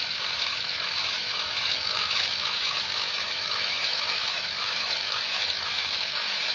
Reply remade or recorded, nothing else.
remade